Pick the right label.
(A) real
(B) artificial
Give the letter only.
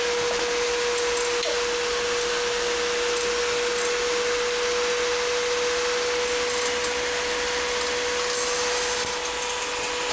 A